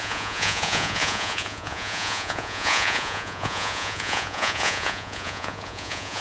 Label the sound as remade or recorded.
remade